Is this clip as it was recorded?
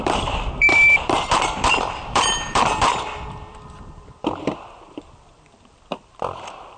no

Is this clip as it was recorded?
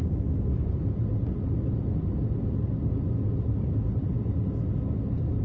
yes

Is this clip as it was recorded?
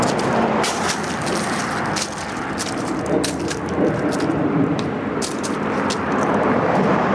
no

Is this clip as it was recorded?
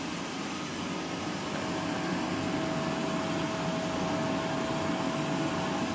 yes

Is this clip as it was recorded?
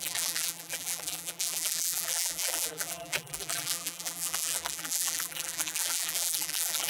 no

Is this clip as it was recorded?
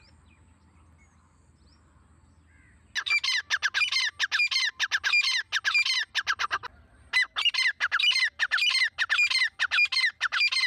yes